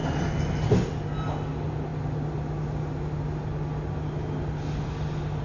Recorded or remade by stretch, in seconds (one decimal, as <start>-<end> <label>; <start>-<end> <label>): 0.0-5.4 recorded